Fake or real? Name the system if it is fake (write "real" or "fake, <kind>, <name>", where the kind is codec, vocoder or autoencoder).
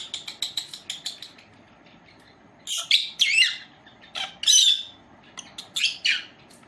real